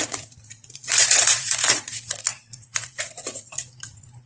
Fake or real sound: fake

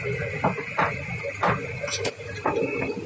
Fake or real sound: real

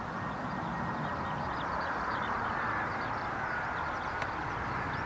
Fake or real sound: real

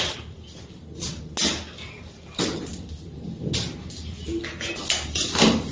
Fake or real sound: real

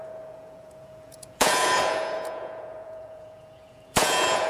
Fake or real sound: fake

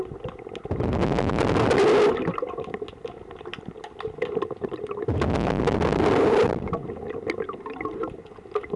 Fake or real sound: real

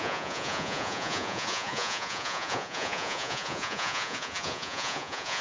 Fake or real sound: fake